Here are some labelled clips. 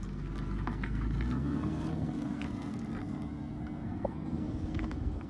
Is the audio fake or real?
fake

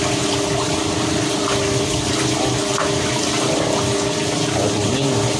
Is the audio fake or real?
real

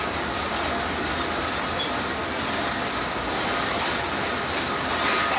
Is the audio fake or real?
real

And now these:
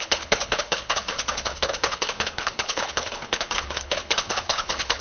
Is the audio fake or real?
fake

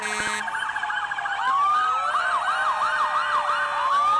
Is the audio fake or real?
real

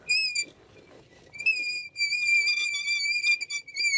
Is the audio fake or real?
real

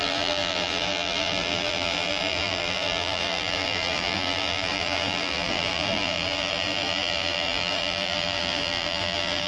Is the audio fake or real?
fake